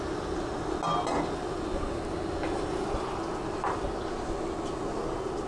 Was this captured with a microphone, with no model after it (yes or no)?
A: yes